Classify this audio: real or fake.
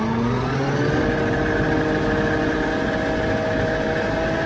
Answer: real